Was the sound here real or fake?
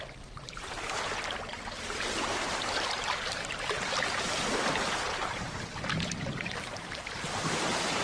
fake